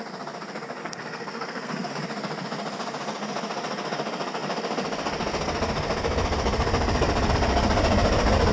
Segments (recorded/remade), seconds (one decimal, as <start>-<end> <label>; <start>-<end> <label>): 0.0-0.8 recorded; 0.8-1.9 remade; 1.9-8.5 recorded

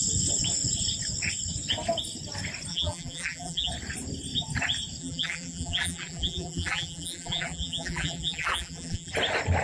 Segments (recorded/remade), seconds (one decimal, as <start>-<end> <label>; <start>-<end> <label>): 0.0-2.7 recorded; 2.7-3.7 remade; 3.7-5.0 recorded; 5.0-9.1 remade; 9.1-9.6 recorded

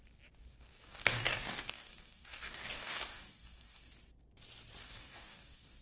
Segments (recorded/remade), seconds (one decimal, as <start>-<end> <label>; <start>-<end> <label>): 0.0-0.4 recorded; 0.4-3.9 remade; 3.9-4.8 recorded; 4.8-5.8 remade

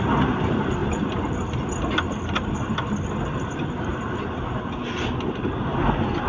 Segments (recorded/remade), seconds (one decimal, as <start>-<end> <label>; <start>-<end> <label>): 0.0-6.3 recorded

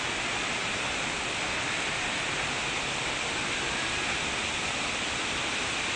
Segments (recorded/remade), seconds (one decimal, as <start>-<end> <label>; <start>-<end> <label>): 0.0-6.0 recorded

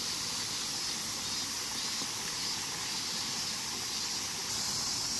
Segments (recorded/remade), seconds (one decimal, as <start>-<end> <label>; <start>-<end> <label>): 0.0-5.2 recorded